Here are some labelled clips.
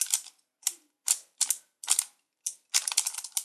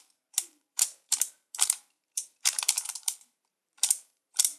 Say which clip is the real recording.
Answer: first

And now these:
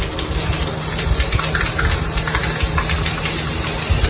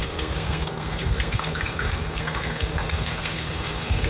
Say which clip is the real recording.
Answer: first